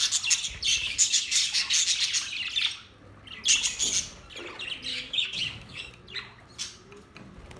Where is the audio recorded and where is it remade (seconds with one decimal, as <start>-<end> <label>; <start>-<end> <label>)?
0.0-0.7 recorded; 0.7-1.7 remade; 1.7-4.9 recorded; 4.9-5.9 remade; 5.9-7.6 recorded